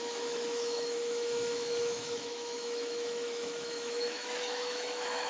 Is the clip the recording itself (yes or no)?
no